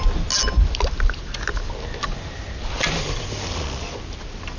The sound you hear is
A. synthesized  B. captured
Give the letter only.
B